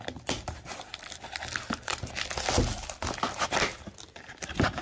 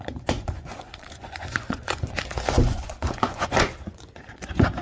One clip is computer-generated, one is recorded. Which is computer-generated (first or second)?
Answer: second